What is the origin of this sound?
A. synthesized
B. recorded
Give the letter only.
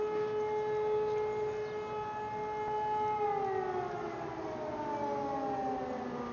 B